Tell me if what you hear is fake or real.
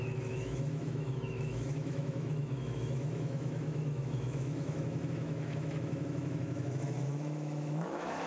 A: fake